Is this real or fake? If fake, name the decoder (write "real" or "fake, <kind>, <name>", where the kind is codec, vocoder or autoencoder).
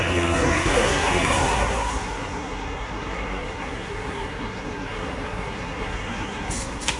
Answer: fake, codec, SNAC